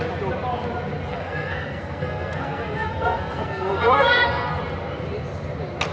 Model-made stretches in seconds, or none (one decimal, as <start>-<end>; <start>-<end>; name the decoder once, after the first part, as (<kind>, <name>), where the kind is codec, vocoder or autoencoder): 1.1-4.6 (codec, SNAC)